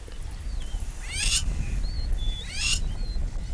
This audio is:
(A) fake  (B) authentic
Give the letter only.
B